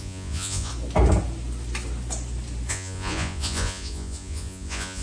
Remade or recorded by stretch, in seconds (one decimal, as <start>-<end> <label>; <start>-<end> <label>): 0.0-0.7 remade; 0.7-2.7 recorded; 2.7-5.0 remade